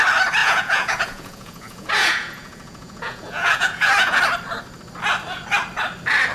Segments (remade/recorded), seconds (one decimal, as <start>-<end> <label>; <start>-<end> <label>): 0.0-0.4 recorded; 0.4-4.2 remade; 4.2-6.3 recorded